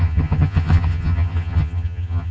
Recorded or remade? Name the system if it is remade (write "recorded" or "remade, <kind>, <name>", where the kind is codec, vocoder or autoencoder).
remade, vocoder, HiFi-GAN